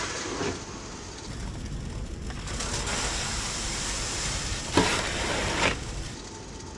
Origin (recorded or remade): recorded